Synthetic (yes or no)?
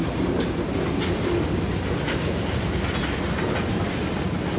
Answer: no